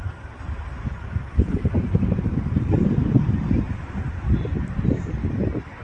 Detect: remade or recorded recorded